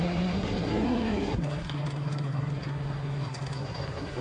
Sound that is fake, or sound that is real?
fake